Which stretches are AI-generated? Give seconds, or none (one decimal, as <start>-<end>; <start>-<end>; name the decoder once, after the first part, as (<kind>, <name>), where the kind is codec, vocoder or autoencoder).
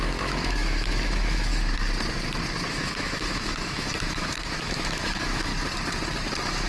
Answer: 0.0-1.5 (autoencoder, DAC-VAE); 2.7-5.5